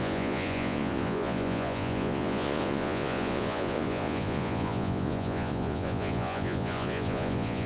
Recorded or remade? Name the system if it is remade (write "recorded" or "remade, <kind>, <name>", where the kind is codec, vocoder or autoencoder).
remade, vocoder, Vocos